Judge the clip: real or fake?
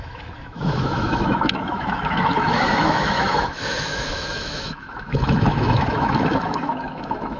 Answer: fake